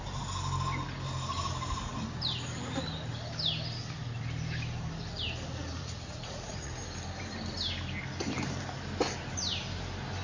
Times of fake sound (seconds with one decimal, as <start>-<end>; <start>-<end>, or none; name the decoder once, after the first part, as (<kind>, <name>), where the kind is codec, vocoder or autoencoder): 5.8-6.7 (vocoder, Vocos)